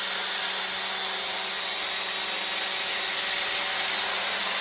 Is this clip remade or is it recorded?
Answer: recorded